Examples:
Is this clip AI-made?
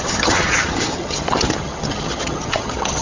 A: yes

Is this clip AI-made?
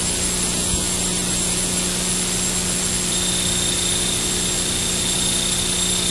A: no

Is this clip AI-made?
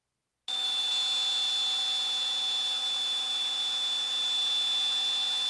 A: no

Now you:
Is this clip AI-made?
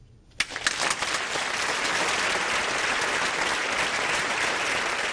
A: no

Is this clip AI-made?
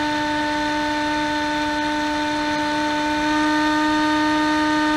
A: no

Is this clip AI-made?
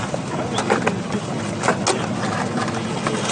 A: no